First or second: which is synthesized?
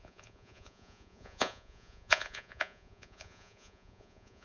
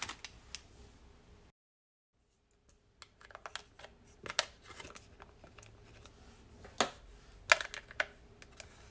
first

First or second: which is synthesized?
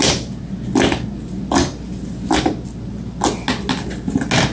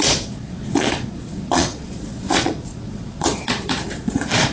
second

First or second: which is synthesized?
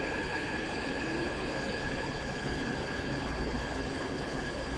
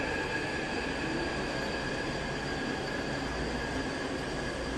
first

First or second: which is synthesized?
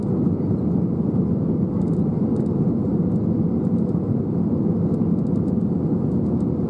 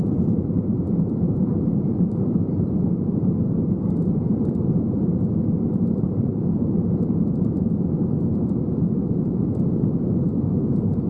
second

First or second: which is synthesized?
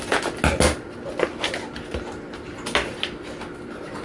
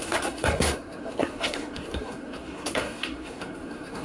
second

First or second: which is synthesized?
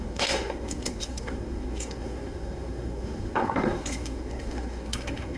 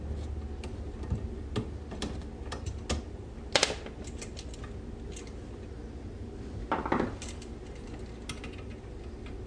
first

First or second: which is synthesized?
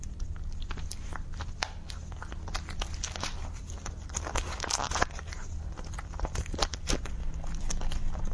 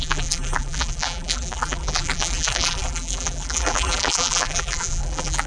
second